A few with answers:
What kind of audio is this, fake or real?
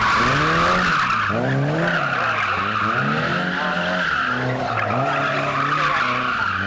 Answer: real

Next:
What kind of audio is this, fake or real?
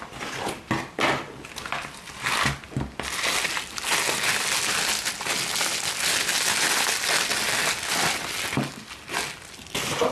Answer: real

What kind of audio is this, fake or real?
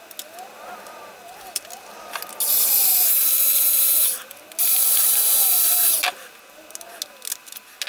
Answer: real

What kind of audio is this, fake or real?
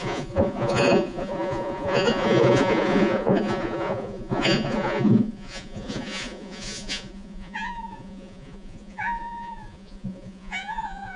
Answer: fake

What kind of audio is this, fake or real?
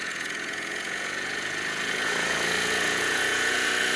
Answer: fake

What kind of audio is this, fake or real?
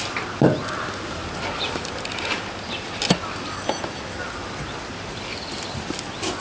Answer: real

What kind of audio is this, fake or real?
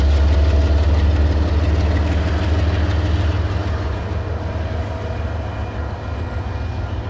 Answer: real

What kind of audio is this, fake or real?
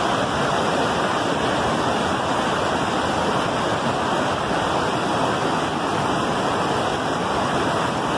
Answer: real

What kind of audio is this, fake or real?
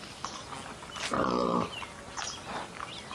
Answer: real